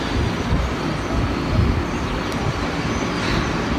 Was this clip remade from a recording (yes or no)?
no